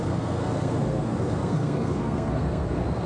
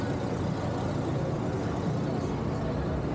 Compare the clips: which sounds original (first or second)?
second